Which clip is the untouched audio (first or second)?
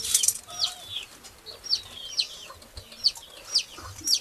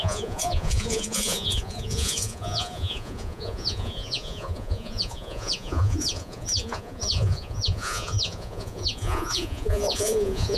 first